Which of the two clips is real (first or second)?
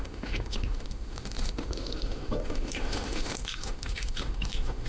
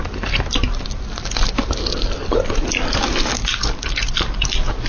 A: second